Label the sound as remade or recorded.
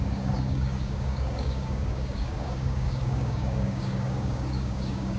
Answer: remade